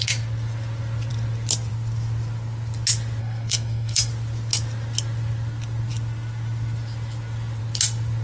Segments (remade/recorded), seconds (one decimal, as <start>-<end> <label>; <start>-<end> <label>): 0.0-3.2 recorded; 3.2-4.1 remade; 4.1-8.2 recorded